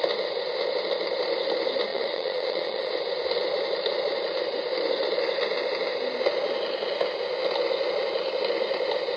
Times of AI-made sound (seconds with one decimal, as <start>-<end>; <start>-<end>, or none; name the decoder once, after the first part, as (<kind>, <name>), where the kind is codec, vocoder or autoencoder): 1.9-2.9 (vocoder, Vocos)